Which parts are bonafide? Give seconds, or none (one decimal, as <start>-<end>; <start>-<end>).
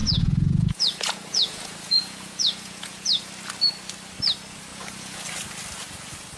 3.3-4.7; 5.2-6.4